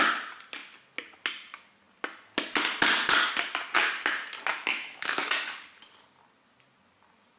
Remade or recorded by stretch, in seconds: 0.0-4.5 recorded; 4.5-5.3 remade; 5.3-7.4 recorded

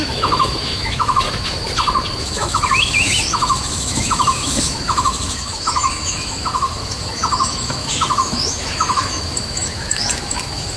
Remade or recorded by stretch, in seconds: 0.0-1.6 remade; 1.6-2.2 recorded; 2.2-10.8 remade

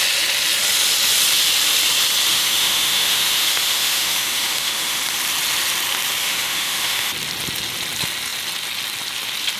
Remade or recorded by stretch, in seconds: 0.0-2.3 recorded; 2.3-5.0 remade; 5.0-6.2 recorded; 6.2-7.1 remade; 7.1-9.6 recorded

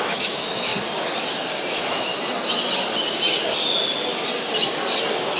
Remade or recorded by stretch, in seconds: 0.0-0.7 remade; 0.7-1.7 recorded; 1.7-2.1 remade; 2.1-5.4 recorded

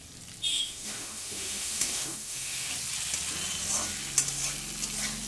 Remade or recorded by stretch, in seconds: 0.0-0.5 recorded; 0.5-2.7 remade; 2.7-5.3 recorded